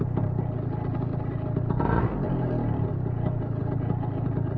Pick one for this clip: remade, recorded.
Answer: recorded